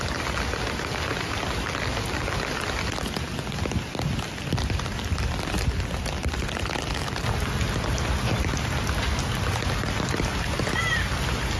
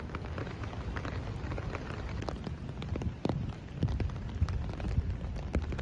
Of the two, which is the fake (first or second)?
second